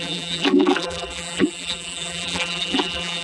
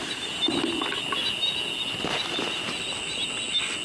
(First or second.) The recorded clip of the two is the second